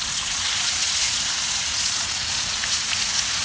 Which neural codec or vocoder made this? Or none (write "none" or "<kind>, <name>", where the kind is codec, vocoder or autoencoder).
vocoder, Vocos